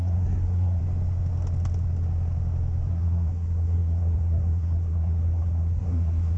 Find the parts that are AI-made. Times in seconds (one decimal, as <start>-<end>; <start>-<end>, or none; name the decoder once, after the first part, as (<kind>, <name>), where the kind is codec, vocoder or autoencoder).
0.0-0.8 (codec, SNAC); 2.9-6.4